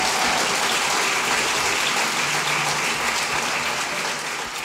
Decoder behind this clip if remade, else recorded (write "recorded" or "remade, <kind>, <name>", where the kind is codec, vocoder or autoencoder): recorded